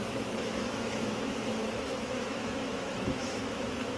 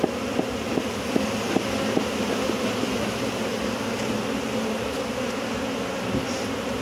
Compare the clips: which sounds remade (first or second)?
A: first